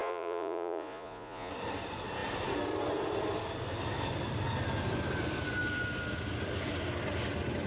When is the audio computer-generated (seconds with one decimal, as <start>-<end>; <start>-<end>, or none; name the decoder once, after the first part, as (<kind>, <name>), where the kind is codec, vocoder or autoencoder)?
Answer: 0.0-1.5 (vocoder, Vocos)